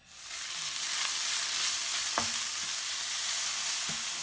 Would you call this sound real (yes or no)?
yes